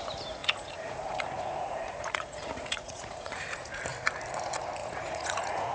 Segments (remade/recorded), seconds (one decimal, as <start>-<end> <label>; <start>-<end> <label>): 0.0-0.4 recorded; 0.4-3.8 remade; 3.8-4.8 recorded; 4.8-5.7 remade